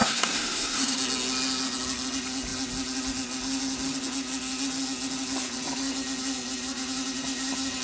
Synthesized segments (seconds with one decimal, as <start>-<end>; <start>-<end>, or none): 0.0-1.0